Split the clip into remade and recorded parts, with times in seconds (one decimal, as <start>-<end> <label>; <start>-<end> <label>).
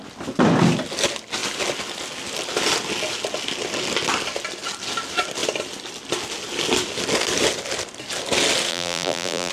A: 0.0-8.7 recorded; 8.7-9.5 remade